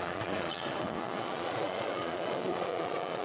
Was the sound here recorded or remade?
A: remade